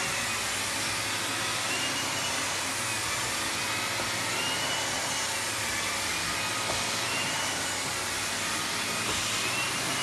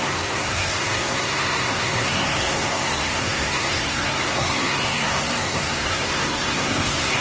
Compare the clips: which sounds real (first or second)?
first